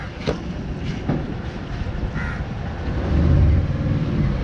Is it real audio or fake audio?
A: real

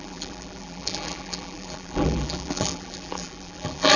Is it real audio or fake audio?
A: fake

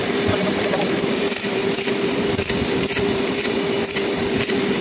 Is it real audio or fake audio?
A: fake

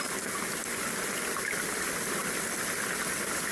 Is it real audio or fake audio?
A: real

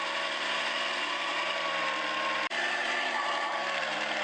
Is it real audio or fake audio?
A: fake